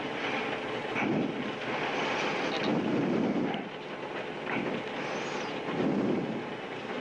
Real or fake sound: real